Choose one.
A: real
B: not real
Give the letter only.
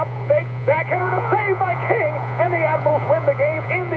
B